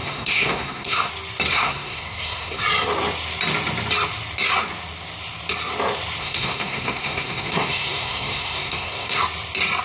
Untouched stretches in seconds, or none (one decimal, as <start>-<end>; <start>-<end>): 1.1-1.5; 2.6-6.2; 9.2-9.8